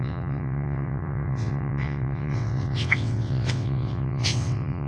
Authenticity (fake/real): fake